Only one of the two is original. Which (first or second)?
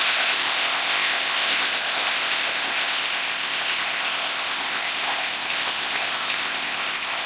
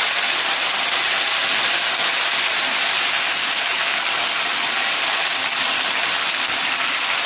second